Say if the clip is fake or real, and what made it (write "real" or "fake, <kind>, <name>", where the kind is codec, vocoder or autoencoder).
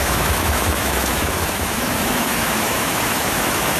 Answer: fake, autoencoder, DAC-VAE